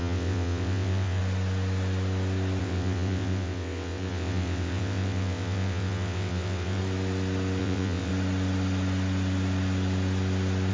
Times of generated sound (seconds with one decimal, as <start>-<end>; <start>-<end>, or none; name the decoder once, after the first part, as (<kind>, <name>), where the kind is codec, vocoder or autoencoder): 0.0-1.2 (vocoder, WaveNeXt); 2.6-6.8; 7.6-8.1